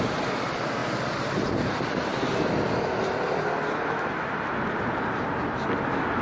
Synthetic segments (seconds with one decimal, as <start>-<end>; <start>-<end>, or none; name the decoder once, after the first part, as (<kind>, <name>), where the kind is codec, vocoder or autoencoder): 0.0-0.8 (vocoder, BigVGAN v2); 1.7-2.1; 5.8-6.2